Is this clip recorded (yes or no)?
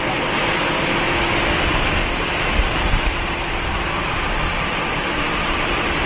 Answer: yes